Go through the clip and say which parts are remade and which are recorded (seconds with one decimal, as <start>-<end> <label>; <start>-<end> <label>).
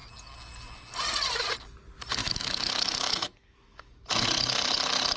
0.0-2.2 recorded; 2.2-3.9 remade; 3.9-5.2 recorded